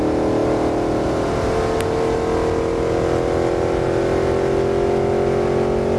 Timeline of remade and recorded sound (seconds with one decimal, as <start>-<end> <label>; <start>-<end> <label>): 0.0-6.0 recorded